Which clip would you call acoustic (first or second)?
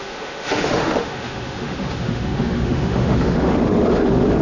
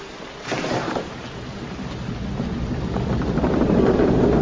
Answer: second